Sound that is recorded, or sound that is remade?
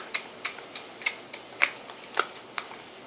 recorded